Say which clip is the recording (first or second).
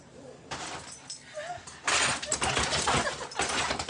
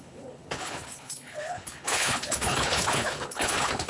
first